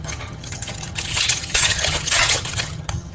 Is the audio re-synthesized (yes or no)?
yes